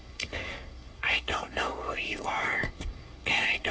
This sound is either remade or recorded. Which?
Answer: remade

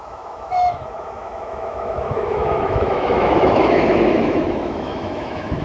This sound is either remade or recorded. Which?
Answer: remade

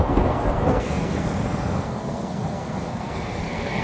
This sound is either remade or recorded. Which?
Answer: remade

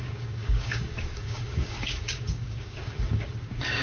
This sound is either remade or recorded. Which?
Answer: remade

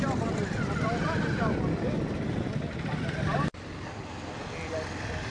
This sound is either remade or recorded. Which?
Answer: recorded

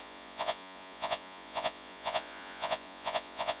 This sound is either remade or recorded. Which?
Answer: remade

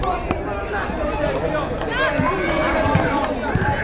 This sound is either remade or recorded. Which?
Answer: recorded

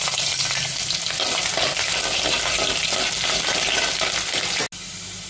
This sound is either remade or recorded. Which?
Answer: recorded